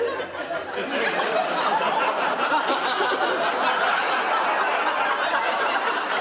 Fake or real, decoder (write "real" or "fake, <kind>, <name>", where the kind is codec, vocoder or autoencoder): real